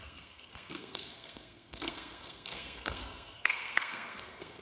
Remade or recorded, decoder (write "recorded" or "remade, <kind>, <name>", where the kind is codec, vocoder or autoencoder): remade, codec, SNAC